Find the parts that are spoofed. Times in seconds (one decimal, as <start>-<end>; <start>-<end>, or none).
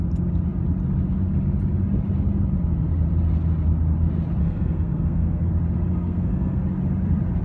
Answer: 4.4-5.5; 5.9-6.6